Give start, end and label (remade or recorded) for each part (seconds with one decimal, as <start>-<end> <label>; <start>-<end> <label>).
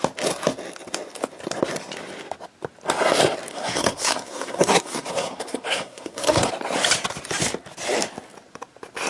0.0-3.5 recorded; 3.5-6.5 remade; 6.5-9.1 recorded